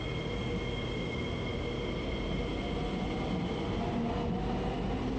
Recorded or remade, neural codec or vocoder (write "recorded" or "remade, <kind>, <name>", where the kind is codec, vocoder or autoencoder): recorded